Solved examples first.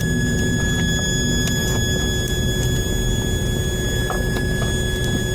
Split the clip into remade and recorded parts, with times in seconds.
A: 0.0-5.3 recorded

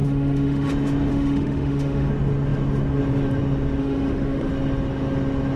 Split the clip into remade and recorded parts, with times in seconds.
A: 0.0-0.7 remade; 0.7-1.1 recorded; 1.1-2.1 remade; 2.1-3.8 recorded; 3.8-4.5 remade; 4.5-5.6 recorded

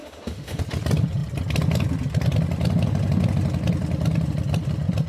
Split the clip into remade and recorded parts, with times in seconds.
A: 0.0-0.6 remade; 0.6-5.1 recorded

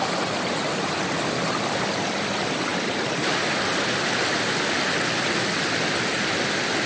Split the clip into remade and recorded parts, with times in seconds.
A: 0.0-6.9 recorded